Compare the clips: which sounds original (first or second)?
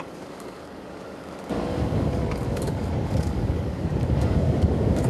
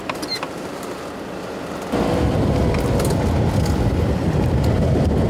second